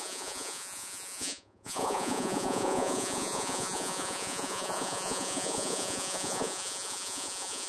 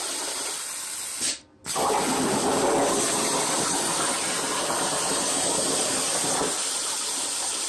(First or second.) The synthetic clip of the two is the first